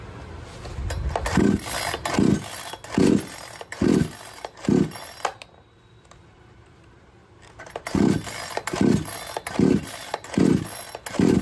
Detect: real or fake real